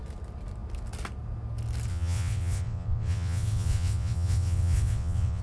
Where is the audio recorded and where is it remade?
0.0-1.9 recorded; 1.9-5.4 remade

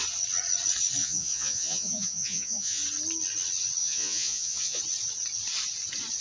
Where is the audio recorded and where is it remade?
0.0-1.0 recorded; 1.0-2.8 remade; 2.8-3.8 recorded; 3.8-4.8 remade; 4.8-6.2 recorded

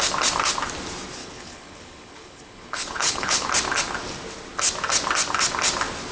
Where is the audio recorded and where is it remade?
0.0-1.2 recorded; 1.2-3.5 remade; 3.5-6.1 recorded

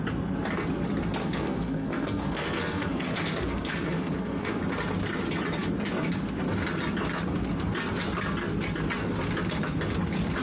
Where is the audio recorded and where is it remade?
0.0-1.2 recorded; 1.2-4.6 remade; 4.6-10.4 recorded

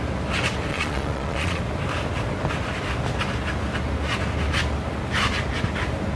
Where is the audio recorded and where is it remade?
0.0-0.7 recorded; 0.7-1.6 remade; 1.6-6.2 recorded

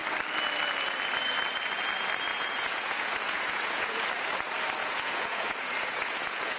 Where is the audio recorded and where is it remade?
0.0-2.3 recorded; 2.3-4.1 remade; 4.1-4.8 recorded; 4.8-6.6 remade

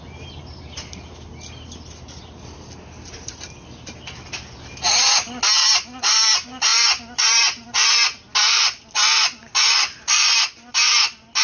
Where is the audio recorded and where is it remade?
0.0-11.4 recorded

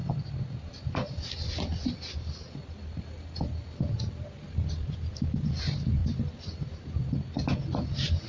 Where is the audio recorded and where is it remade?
0.0-8.3 recorded